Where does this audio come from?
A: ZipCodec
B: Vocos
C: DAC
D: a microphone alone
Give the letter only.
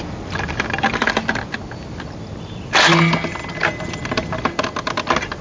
D